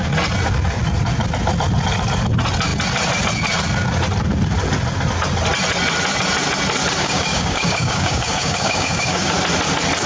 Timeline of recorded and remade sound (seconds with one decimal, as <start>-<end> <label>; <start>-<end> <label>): 0.0-7.0 recorded; 7.0-9.3 remade; 9.3-10.1 recorded